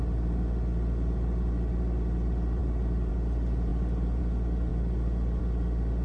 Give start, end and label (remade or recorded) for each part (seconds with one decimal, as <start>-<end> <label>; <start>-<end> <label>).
0.0-6.0 recorded